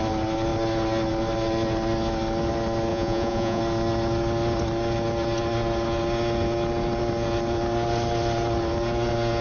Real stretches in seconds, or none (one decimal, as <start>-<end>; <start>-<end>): 0.0-2.9; 3.6-9.4